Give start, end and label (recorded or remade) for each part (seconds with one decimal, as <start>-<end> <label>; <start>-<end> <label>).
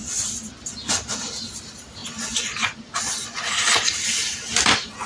0.0-5.1 recorded